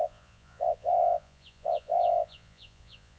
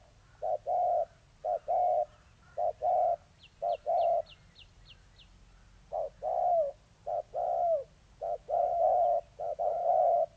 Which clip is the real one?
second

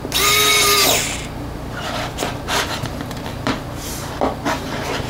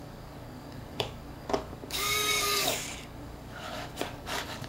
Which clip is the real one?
first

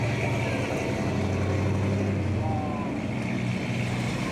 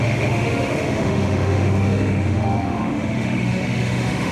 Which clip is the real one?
first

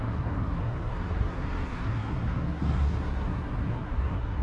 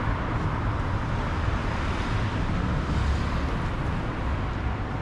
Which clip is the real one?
second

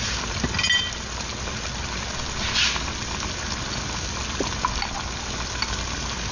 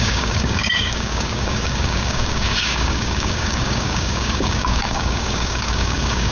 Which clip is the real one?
first